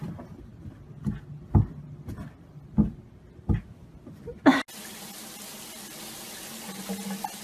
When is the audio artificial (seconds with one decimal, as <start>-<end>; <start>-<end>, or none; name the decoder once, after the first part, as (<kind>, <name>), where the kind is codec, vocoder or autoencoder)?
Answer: none